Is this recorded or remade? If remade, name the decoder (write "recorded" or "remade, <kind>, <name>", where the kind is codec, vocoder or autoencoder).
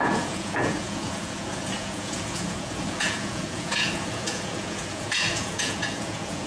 remade, vocoder, Vocos